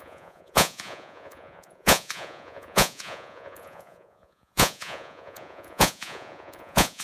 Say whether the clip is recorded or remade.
remade